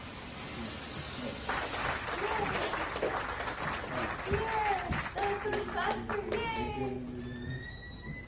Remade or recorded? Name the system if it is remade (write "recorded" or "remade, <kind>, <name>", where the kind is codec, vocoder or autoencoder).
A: recorded